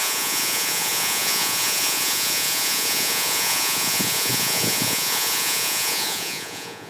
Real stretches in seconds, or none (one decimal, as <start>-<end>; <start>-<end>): none

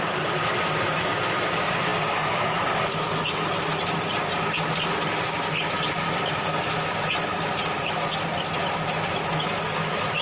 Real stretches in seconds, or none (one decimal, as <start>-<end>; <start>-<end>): 0.0-10.2

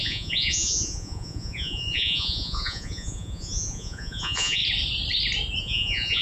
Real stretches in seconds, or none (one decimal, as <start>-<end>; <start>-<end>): 4.6-5.6

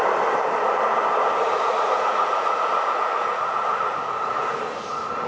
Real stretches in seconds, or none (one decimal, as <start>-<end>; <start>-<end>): 0.0-1.4; 4.6-5.3